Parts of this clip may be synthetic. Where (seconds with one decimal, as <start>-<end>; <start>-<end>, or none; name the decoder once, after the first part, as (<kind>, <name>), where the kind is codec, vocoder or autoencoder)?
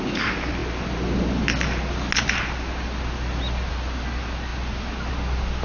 none